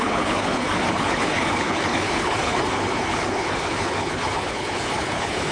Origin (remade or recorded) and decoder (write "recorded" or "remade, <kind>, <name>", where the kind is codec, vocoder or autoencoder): remade, codec, HILCodec